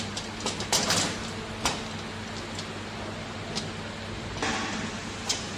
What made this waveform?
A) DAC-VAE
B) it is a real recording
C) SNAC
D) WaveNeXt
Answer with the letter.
B